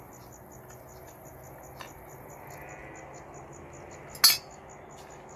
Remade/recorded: recorded